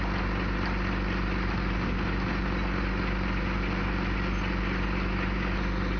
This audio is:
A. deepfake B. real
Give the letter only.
B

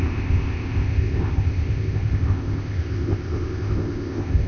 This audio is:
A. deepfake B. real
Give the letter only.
A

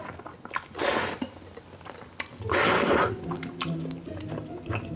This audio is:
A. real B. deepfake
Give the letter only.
A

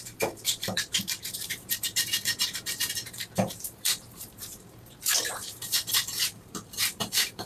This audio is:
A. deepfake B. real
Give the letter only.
A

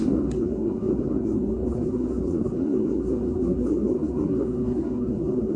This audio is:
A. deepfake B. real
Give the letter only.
A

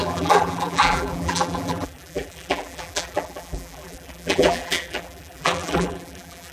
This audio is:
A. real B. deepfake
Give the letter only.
B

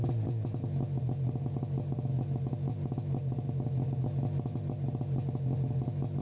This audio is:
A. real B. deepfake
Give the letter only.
A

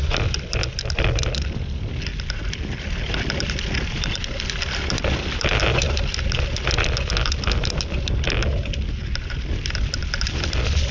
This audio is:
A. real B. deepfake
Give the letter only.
A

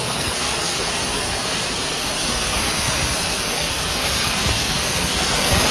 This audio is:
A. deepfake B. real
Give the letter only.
A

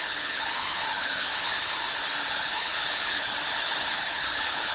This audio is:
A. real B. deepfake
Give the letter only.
B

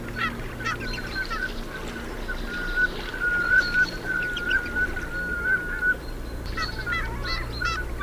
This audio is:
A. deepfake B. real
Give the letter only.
B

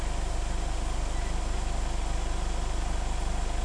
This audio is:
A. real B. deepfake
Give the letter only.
A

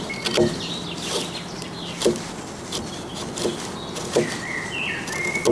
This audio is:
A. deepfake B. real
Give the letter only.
B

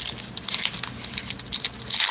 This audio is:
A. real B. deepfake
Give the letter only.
A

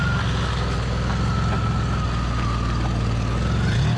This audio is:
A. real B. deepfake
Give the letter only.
A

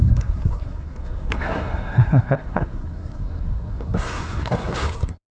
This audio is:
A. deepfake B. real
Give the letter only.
A